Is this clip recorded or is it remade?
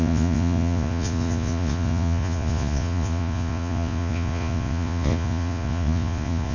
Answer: remade